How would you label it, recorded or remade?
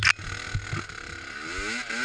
recorded